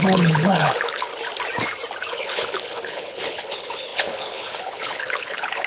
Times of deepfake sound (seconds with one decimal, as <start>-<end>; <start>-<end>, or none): 0.0-1.1; 2.1-5.7